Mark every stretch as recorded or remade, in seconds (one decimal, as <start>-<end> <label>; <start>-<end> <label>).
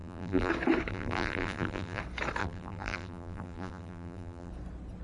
0.0-0.5 remade; 0.5-0.9 recorded; 0.9-2.0 remade; 2.0-2.4 recorded; 2.4-4.5 remade; 4.5-5.0 recorded